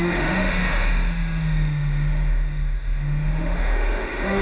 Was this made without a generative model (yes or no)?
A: no